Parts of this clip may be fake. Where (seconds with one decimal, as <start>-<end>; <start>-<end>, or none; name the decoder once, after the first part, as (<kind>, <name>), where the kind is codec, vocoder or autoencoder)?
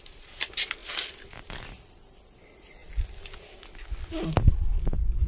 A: none